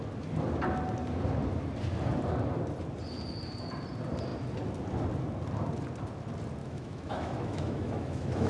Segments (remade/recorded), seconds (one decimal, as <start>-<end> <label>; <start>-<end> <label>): 0.0-6.6 recorded; 6.6-8.5 remade